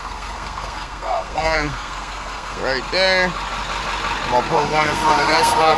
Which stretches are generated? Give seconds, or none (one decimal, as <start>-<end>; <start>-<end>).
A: 0.0-2.6; 4.5-5.8